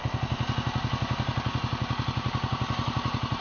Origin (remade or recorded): recorded